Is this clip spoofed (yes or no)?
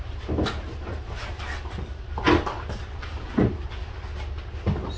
no